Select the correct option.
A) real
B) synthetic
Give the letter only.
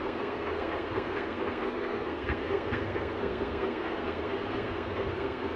B